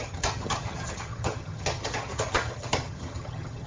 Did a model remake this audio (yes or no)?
yes